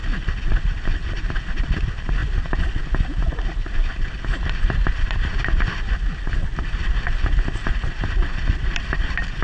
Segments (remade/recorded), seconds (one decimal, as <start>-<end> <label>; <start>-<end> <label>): 0.0-0.7 recorded; 0.7-2.2 remade; 2.2-2.8 recorded; 2.8-9.4 remade